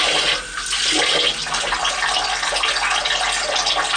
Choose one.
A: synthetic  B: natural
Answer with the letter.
B